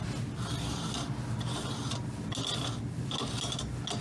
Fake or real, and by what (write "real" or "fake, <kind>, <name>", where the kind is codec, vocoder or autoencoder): real